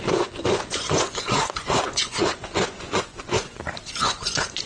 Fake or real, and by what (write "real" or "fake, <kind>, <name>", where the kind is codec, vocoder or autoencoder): fake, vocoder, Vocos